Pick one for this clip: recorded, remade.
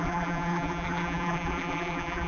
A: remade